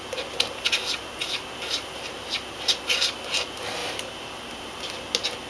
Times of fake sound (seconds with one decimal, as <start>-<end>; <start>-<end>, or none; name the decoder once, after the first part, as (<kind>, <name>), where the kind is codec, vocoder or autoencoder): 3.8-4.5 (vocoder, BigVGAN v2)